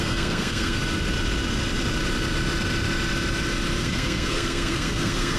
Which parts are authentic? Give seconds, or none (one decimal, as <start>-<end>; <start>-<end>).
0.8-3.8

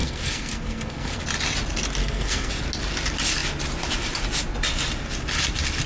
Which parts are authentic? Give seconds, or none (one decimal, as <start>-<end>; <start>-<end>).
1.2-2.0; 2.5-5.9

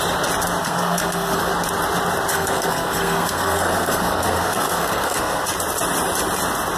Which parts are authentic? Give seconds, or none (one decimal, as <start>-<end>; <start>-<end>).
0.0-0.6; 1.5-2.3; 5.4-6.8

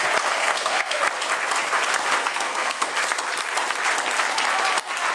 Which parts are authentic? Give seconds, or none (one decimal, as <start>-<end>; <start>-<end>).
0.0-0.4; 1.0-2.2; 2.9-5.1

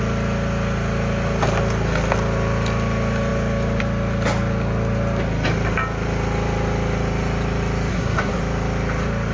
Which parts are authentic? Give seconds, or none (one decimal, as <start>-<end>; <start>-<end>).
0.0-7.9; 8.4-9.3